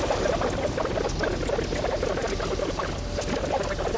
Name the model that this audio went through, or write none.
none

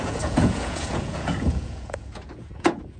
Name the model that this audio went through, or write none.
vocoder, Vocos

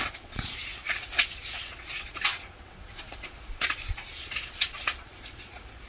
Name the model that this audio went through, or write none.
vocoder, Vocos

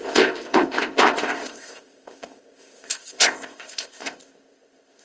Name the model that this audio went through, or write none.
codec, ZipCodec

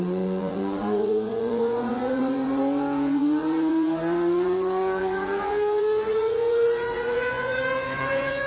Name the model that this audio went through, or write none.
vocoder, Vocos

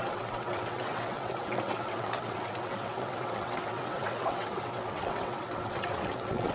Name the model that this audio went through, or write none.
vocoder, WaveNeXt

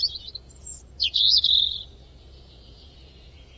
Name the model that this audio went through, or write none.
vocoder, Vocos